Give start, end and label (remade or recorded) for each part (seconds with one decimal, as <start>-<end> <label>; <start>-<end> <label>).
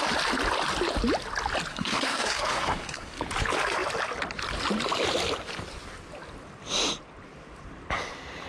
0.0-1.7 recorded; 1.7-3.2 remade; 3.2-8.5 recorded